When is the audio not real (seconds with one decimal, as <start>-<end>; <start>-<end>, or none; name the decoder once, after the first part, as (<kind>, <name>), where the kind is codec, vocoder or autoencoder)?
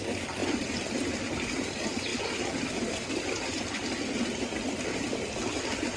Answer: none